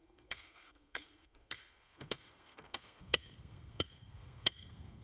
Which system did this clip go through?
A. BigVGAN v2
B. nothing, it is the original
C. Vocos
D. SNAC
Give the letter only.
D